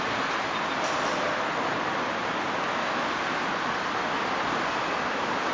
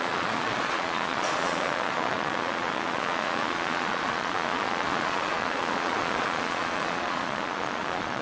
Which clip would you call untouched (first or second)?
first